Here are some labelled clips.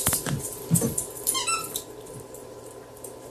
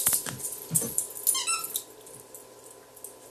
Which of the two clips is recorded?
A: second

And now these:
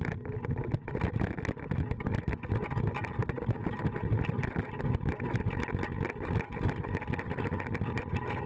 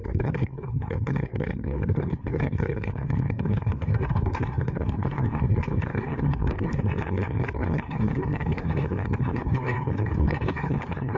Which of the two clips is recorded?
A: first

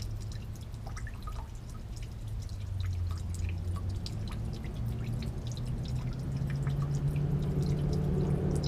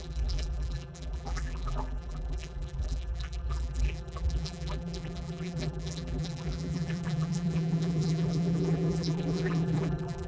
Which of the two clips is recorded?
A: first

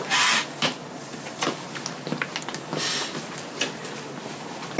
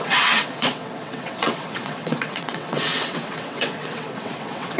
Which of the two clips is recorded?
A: first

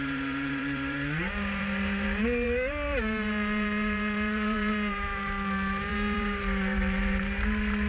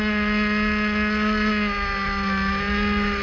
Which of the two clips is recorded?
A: second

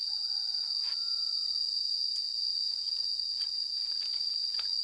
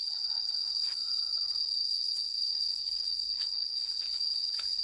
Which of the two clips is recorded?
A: first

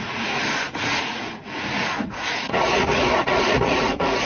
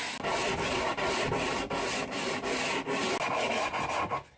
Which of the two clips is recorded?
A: second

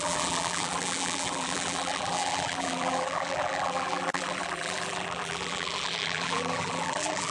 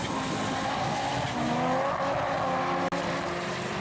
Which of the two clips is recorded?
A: second